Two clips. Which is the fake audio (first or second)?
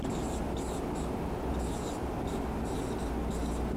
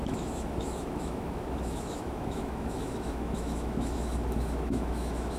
second